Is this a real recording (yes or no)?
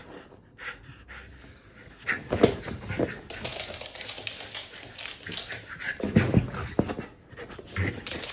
yes